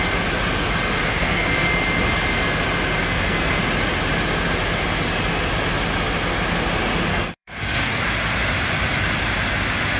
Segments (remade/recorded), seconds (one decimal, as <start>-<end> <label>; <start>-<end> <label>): 0.0-1.0 recorded; 1.0-1.7 remade; 1.7-3.0 recorded; 3.0-3.6 remade; 3.6-7.1 recorded; 7.1-8.0 remade; 8.0-10.0 recorded